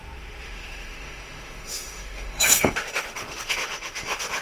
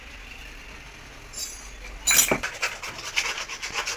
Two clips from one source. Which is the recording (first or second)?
second